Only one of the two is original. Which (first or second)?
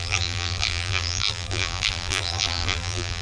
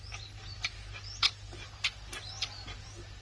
second